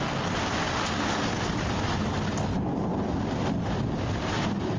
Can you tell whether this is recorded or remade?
recorded